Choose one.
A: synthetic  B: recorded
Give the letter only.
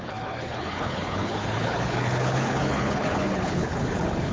A